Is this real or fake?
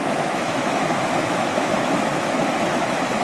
fake